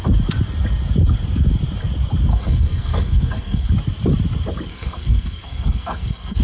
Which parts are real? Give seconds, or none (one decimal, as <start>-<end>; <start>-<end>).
0.0-2.3; 3.7-4.7